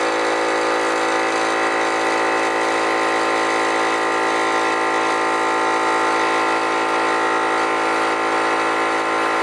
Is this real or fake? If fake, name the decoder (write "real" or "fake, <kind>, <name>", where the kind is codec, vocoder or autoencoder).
real